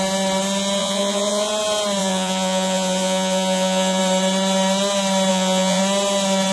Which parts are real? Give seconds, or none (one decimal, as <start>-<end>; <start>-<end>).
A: 0.0-0.8; 1.5-2.0; 4.0-5.3; 5.8-6.5